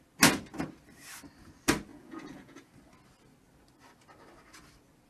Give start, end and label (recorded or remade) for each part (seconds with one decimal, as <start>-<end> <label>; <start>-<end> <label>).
0.0-1.9 recorded; 1.9-2.7 remade; 2.7-5.1 recorded